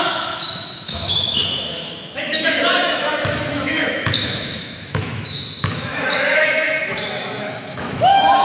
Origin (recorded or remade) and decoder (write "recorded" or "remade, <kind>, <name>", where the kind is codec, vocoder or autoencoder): remade, autoencoder, DAC-VAE